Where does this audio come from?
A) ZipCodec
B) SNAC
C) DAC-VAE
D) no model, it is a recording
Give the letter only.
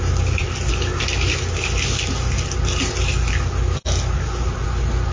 D